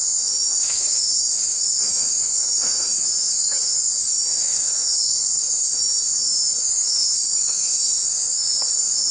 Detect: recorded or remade remade